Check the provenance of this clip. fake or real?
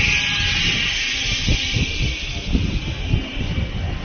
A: real